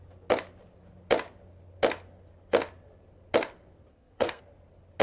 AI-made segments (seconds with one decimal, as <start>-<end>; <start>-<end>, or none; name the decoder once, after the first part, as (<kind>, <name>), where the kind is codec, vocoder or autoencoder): 3.9-4.4 (codec, SNAC)